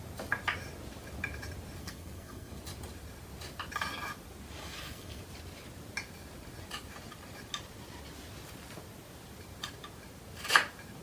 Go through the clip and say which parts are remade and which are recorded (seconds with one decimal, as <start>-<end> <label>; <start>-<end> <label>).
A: 0.0-1.8 recorded; 1.8-2.6 remade; 2.6-4.6 recorded; 4.6-5.2 remade; 5.2-11.0 recorded